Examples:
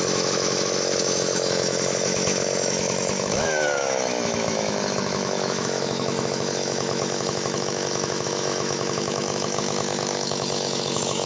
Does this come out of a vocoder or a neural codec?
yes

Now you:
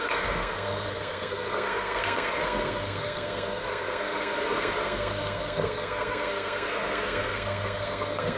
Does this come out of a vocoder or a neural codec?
yes